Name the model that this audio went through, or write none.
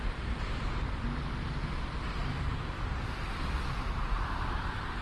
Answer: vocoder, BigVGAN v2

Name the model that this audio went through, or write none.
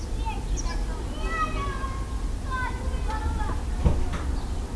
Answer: none